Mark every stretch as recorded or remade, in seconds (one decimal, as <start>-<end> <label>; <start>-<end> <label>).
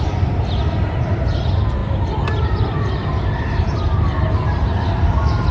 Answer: 0.0-5.5 recorded